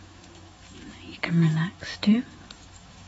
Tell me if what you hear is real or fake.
fake